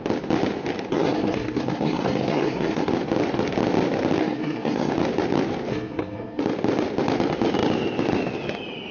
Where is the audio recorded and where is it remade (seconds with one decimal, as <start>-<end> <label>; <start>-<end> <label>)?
0.0-0.9 recorded; 0.9-2.9 remade; 2.9-4.2 recorded; 4.2-4.9 remade; 4.9-5.7 recorded; 5.7-6.4 remade; 6.4-8.9 recorded